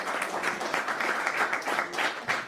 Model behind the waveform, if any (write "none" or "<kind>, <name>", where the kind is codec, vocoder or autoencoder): none